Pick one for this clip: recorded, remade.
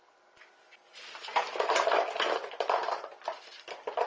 recorded